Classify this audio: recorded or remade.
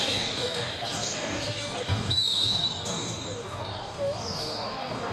remade